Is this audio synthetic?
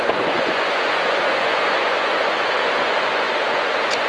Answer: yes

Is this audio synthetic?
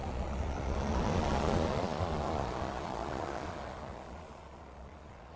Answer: yes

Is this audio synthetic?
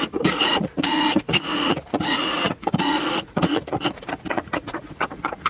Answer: yes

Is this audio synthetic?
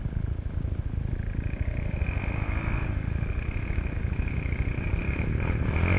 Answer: no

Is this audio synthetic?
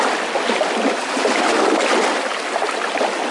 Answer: no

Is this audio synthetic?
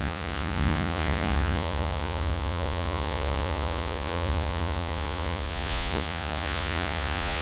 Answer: yes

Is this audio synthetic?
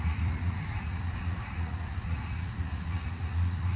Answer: yes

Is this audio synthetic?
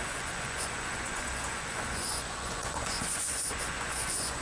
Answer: yes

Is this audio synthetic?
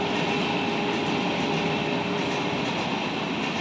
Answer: no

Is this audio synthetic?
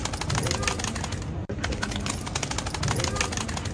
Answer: no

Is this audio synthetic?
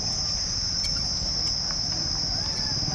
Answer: no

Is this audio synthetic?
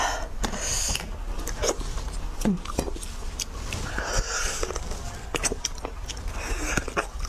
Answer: no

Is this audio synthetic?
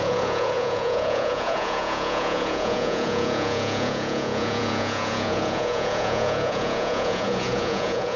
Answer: yes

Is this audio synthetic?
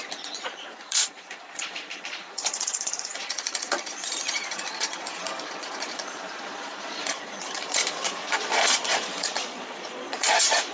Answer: yes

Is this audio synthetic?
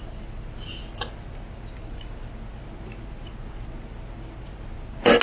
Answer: no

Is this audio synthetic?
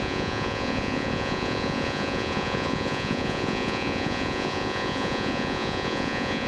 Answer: yes